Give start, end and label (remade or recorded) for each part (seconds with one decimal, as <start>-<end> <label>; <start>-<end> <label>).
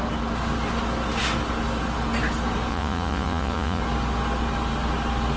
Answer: 0.0-2.7 recorded; 2.7-3.8 remade; 3.8-5.4 recorded